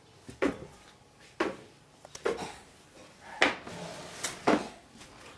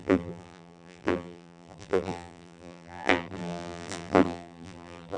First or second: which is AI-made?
second